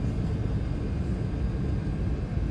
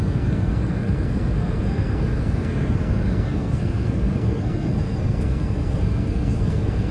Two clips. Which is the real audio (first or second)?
first